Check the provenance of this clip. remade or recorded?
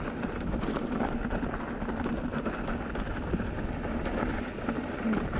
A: recorded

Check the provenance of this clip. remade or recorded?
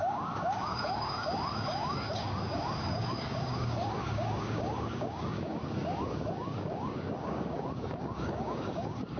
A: remade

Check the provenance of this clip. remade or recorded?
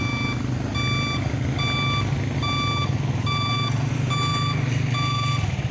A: recorded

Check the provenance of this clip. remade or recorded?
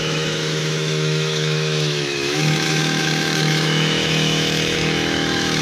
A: remade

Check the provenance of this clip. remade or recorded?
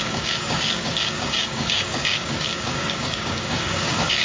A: remade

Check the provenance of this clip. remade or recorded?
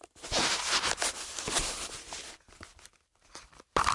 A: recorded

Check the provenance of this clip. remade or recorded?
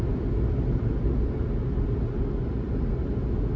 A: recorded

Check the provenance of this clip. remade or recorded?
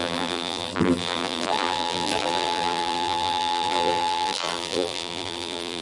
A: remade